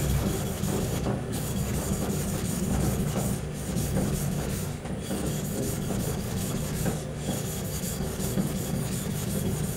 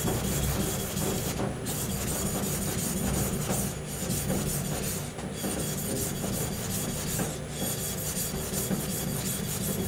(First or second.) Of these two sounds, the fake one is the first